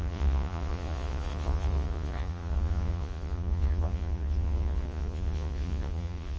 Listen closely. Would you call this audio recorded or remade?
remade